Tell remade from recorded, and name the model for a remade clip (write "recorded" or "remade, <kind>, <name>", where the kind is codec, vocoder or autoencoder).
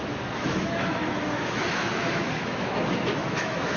remade, autoencoder, DAC-VAE